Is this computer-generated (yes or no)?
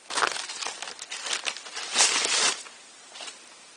no